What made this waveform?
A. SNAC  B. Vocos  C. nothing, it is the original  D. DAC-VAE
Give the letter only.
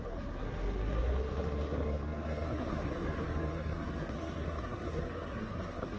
A